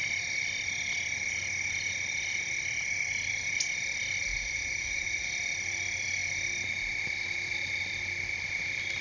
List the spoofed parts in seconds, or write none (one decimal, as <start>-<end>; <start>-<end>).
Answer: 4.3-5.3